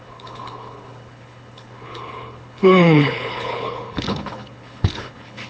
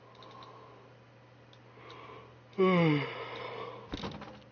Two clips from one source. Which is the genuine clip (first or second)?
second